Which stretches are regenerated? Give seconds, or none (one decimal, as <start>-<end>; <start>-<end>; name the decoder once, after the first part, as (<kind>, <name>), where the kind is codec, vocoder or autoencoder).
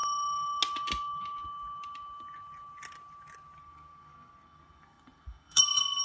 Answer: 3.6-6.0 (codec, SNAC)